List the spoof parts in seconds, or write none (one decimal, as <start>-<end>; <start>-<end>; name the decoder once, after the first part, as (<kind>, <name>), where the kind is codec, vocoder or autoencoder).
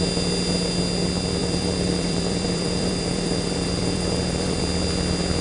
1.4-4.6 (vocoder, BigVGAN v2)